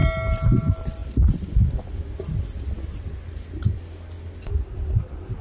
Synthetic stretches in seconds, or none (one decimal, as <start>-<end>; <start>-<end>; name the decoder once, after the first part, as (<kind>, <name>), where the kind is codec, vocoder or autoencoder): none